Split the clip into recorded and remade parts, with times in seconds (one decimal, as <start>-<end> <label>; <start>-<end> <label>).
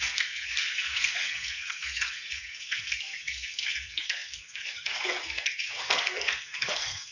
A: 0.0-7.1 remade